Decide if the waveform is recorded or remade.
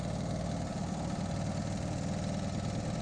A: recorded